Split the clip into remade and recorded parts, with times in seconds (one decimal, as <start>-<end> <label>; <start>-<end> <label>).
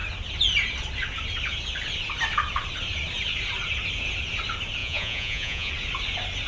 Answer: 0.0-4.8 recorded; 4.8-5.7 remade; 5.7-6.5 recorded